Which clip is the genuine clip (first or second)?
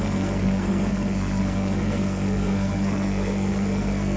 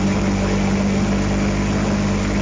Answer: second